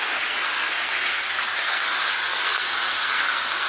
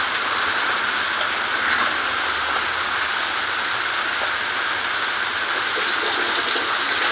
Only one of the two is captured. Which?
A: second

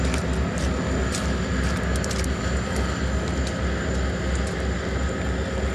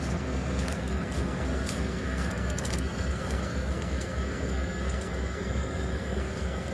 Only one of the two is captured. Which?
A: first